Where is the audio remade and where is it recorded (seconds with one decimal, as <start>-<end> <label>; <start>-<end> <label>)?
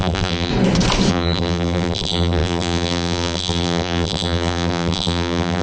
0.0-0.5 remade; 0.5-1.1 recorded; 1.1-5.6 remade